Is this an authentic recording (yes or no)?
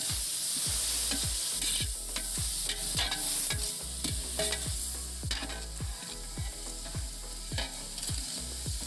yes